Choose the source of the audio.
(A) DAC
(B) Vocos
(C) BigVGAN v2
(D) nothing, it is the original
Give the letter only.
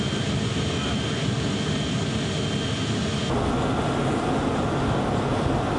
D